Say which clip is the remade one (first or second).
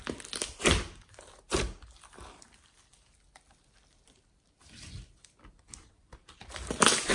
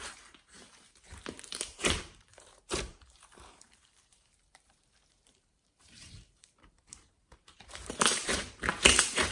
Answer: second